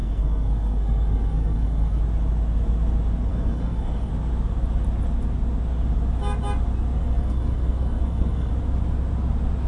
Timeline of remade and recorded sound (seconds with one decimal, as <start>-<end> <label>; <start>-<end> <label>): 0.0-2.0 remade; 2.0-3.3 recorded; 3.3-4.1 remade; 4.1-7.0 recorded; 7.0-8.5 remade; 8.5-9.7 recorded